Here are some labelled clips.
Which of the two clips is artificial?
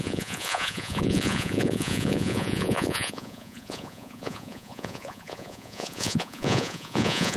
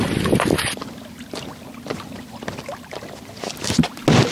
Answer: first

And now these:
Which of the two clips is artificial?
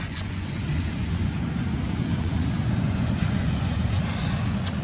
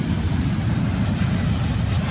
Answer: first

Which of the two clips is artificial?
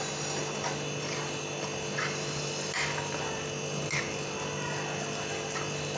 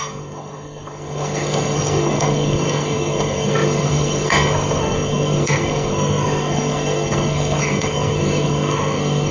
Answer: second